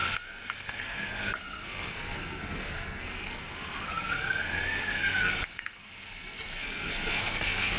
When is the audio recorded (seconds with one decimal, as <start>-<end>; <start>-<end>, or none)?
none